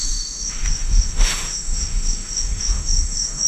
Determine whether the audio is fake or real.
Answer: fake